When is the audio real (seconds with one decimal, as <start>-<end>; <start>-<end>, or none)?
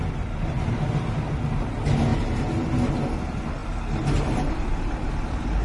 0.0-5.6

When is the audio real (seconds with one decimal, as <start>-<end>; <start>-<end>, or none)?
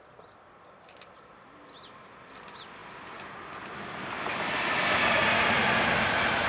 0.0-6.5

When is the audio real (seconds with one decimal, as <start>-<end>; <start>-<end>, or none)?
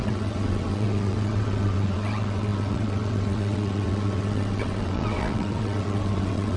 none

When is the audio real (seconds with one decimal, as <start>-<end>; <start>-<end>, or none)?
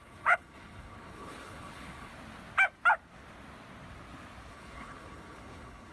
2.1-4.5